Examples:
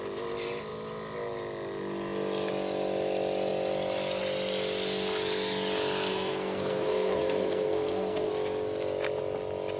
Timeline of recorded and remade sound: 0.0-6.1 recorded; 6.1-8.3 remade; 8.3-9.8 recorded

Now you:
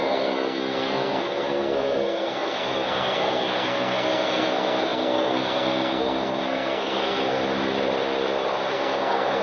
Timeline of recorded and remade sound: 0.0-7.4 remade; 7.4-8.7 recorded; 8.7-9.4 remade

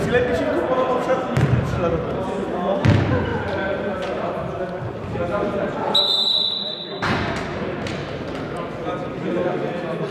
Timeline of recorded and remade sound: 0.0-10.1 recorded

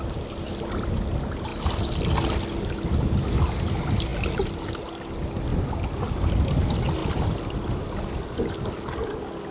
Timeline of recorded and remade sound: 0.0-9.5 recorded